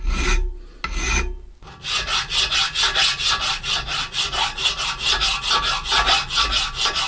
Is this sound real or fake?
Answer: real